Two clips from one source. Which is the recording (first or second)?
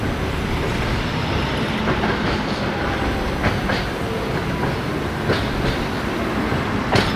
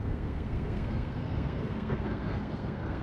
first